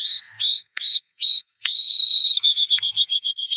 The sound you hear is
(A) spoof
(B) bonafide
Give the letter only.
A